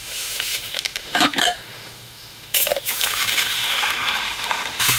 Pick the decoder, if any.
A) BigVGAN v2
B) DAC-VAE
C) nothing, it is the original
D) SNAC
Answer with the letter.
B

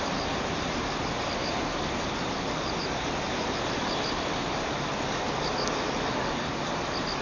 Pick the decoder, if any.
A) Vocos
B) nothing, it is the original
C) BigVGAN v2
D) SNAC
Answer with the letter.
B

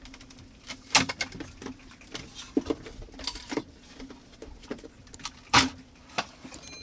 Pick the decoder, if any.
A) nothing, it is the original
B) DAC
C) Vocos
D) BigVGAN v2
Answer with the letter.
A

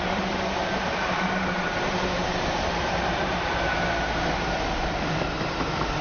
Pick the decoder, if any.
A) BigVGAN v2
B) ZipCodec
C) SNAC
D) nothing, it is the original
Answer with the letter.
A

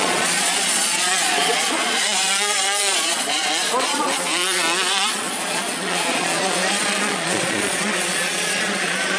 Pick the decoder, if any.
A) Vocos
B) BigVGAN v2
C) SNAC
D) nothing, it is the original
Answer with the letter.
A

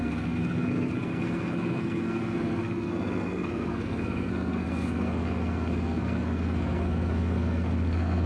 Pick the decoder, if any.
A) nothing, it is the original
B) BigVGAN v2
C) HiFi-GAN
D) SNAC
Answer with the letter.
D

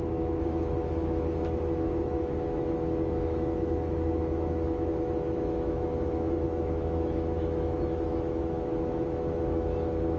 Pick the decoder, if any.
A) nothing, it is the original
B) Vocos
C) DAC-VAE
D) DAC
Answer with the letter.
C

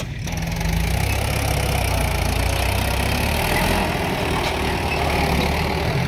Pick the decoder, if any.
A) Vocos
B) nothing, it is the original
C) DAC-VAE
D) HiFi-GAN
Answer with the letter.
B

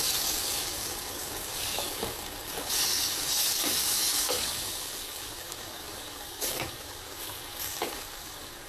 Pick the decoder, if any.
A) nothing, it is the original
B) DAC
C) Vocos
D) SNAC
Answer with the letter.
B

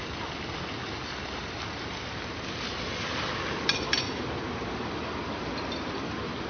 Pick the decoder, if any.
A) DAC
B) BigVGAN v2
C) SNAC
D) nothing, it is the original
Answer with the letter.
D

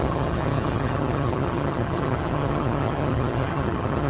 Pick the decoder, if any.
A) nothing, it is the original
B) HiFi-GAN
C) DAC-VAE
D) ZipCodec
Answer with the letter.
B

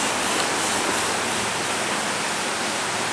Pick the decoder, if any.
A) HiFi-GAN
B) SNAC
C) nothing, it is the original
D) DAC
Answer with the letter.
C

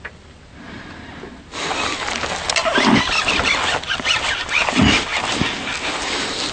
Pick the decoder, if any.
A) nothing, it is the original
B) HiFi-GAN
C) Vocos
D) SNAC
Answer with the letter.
A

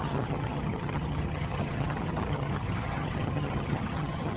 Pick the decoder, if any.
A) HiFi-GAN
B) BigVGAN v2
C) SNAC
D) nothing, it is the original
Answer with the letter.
A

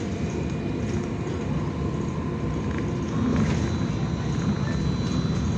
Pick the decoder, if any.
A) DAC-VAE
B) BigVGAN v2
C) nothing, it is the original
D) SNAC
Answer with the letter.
C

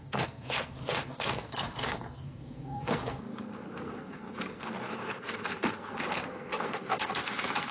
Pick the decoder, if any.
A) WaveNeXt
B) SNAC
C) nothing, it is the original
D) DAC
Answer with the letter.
B